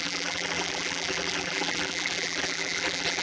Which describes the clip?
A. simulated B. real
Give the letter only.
A